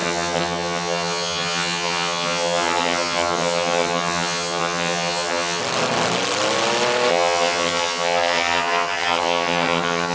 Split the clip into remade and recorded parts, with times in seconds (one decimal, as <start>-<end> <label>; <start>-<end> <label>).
0.0-5.6 remade; 5.6-7.1 recorded; 7.1-10.1 remade